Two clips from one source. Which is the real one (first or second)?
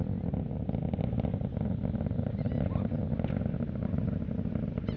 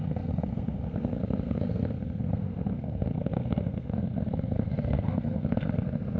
first